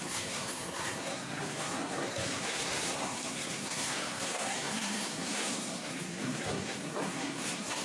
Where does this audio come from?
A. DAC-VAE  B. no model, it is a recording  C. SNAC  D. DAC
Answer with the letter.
C